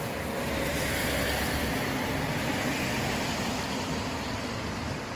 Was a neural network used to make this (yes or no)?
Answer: yes